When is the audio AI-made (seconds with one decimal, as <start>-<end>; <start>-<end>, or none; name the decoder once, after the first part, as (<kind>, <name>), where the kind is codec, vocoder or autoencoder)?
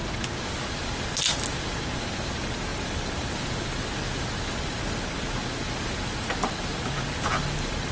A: none